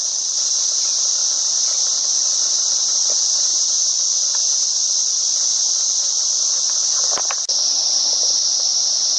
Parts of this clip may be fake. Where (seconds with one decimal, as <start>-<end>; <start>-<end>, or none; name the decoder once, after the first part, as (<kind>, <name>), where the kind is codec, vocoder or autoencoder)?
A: none